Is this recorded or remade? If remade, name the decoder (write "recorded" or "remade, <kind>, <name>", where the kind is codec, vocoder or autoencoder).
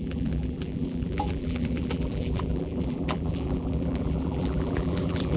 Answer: remade, vocoder, BigVGAN v2